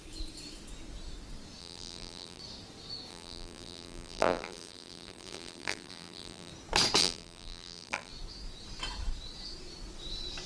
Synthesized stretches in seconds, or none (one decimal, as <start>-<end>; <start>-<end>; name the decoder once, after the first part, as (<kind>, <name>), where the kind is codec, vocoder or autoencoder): 1.6-2.4 (vocoder, BigVGAN v2); 3.1-6.5; 7.0-8.1